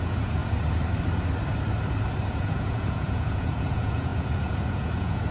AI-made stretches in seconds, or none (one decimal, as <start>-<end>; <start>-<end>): 0.0-0.4; 2.3-5.3